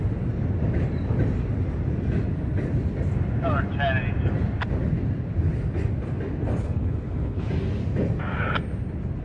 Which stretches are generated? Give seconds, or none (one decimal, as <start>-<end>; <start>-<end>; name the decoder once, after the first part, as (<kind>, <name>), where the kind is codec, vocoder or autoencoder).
6.6-7.5 (codec, HILCodec)